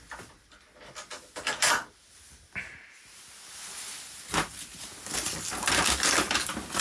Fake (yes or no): no